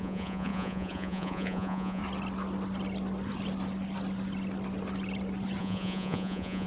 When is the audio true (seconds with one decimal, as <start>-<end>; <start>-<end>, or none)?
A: 2.0-5.6